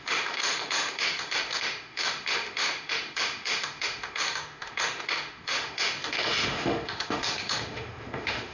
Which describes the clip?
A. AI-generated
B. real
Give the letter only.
A